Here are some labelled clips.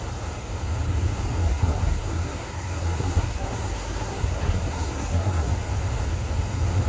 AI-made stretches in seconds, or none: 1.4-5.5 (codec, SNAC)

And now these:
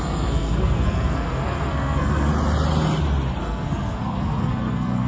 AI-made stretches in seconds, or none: 0.0-2.3 (codec, SNAC); 3.4-5.1

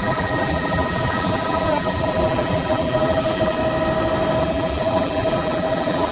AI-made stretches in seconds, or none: 0.0-3.6 (vocoder, BigVGAN v2); 4.4-6.1

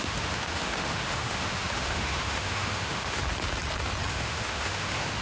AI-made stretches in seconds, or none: 0.0-3.2 (autoencoder, DAC-VAE); 4.1-5.2

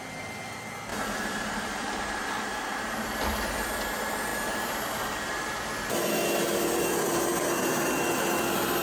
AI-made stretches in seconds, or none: 0.9-3.2 (vocoder, BigVGAN v2); 4.3-5.6

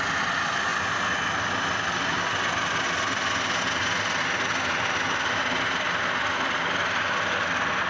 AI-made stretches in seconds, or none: none